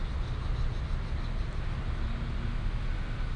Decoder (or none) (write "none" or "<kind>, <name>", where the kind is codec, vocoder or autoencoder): none